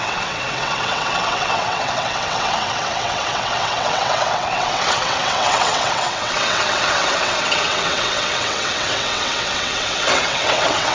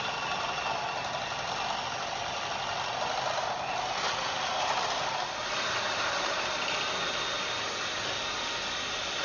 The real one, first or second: second